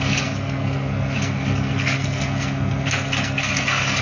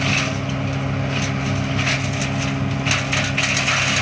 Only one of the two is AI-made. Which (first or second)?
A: first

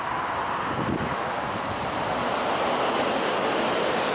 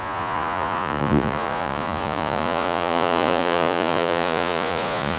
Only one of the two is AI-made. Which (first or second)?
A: second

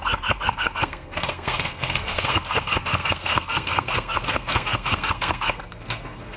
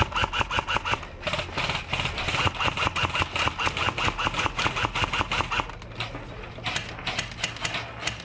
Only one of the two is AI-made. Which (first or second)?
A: first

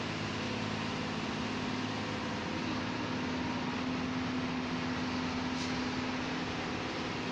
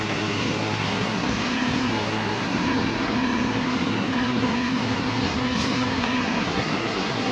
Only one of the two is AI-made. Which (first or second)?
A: second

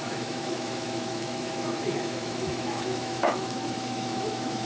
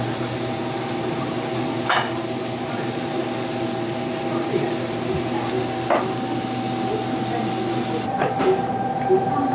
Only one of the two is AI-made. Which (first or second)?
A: first